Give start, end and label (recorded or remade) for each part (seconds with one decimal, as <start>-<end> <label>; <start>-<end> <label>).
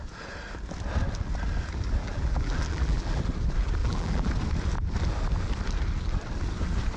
0.0-2.0 recorded; 2.0-3.2 remade; 3.2-3.8 recorded; 3.8-4.3 remade; 4.3-7.0 recorded